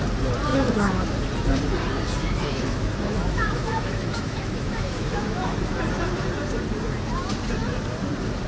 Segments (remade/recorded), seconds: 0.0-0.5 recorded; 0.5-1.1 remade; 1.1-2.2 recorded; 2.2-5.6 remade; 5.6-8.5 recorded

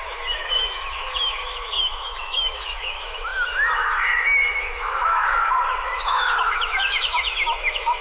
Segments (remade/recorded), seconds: 0.0-8.0 remade

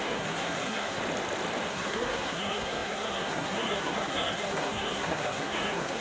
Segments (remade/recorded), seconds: 0.0-1.0 remade; 1.0-1.7 recorded; 1.7-6.0 remade

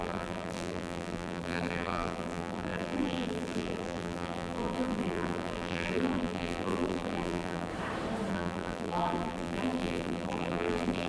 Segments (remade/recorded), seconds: 0.0-7.7 remade; 7.7-8.3 recorded; 8.3-11.1 remade

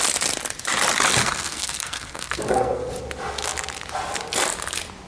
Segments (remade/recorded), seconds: 0.0-1.2 recorded; 1.2-2.9 remade; 2.9-5.1 recorded